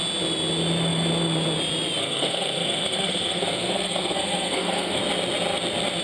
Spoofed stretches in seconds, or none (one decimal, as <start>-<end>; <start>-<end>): 2.0-5.0